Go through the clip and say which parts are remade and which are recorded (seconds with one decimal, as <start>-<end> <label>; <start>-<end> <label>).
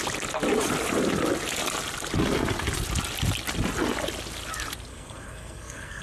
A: 0.0-4.9 recorded; 4.9-6.0 remade